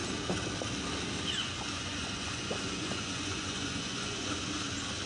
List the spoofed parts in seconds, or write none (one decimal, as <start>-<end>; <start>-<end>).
1.4-4.5